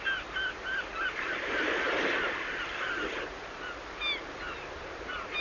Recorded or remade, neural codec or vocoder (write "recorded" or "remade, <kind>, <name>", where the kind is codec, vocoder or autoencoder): recorded